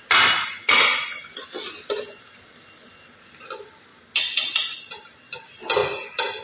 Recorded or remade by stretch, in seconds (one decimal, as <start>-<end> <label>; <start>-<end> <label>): 0.0-6.4 recorded